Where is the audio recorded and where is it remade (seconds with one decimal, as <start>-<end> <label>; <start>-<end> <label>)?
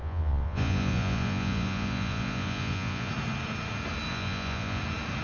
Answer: 0.0-3.1 remade; 3.1-4.1 recorded; 4.1-4.8 remade; 4.8-5.2 recorded